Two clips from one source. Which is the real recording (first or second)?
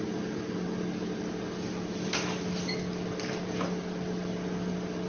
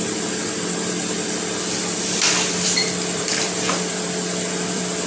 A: first